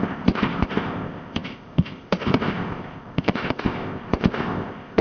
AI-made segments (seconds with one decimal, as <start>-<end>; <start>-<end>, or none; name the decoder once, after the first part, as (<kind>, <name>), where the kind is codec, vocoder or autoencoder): 0.0-5.0 (codec, ZipCodec)